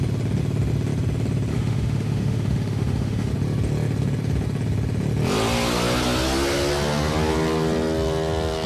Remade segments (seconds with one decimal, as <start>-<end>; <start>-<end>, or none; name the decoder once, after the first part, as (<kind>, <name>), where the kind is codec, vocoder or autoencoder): 1.5-3.3 (autoencoder, DAC-VAE)